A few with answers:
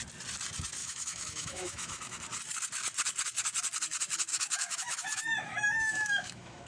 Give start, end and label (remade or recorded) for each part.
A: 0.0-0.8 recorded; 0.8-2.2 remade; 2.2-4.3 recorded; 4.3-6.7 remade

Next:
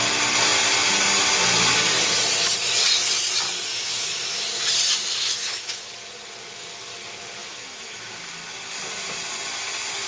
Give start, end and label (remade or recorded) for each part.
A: 0.0-3.7 recorded; 3.7-4.4 remade; 4.4-5.3 recorded; 5.3-5.9 remade; 5.9-7.4 recorded; 7.4-8.3 remade; 8.3-10.1 recorded